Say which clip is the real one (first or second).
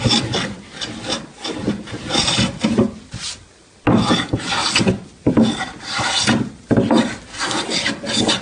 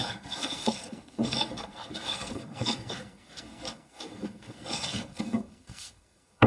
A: first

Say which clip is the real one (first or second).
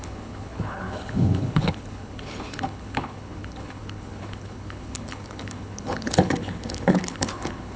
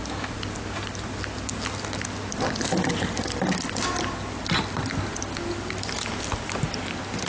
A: second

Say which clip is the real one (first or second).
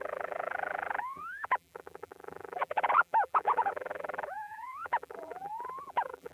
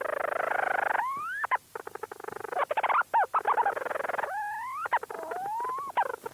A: second